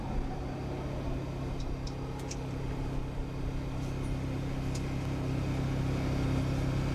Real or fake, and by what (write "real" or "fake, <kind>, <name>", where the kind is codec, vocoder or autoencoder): real